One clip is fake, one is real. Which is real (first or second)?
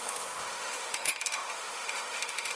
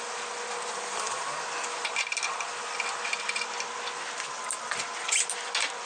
second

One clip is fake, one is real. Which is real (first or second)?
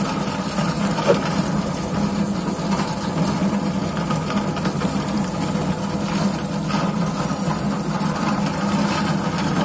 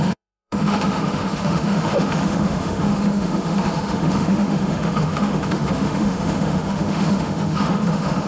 first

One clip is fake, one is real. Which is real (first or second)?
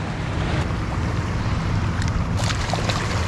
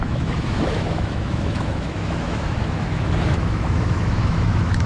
first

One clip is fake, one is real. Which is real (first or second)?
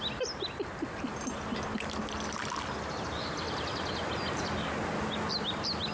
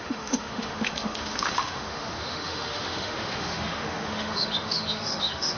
first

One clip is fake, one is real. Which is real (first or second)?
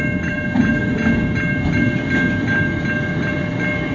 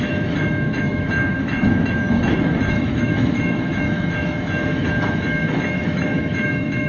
first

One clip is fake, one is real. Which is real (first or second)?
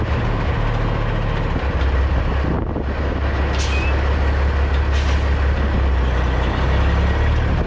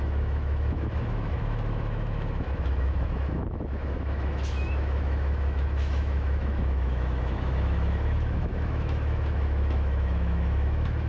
first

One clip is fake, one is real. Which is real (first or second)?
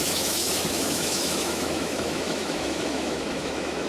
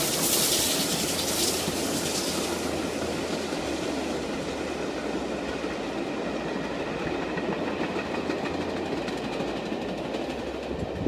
second